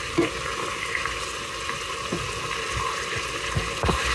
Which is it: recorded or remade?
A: recorded